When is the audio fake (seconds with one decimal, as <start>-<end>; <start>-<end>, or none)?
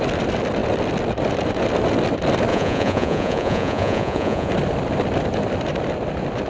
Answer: 2.5-4.5